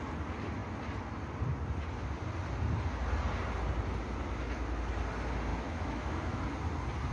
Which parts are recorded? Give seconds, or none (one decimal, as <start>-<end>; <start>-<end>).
0.0-5.5; 6.4-7.1